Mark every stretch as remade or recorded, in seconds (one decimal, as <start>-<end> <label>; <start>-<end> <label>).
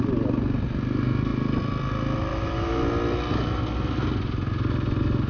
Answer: 0.0-2.3 recorded; 2.3-2.8 remade; 2.8-5.3 recorded